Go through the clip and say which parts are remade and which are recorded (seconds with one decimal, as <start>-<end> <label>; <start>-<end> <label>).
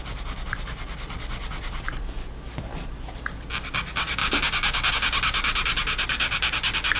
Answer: 0.0-7.0 recorded